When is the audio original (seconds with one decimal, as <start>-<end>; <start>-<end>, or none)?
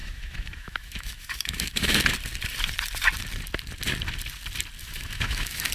2.0-4.8